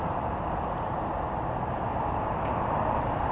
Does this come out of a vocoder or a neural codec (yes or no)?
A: no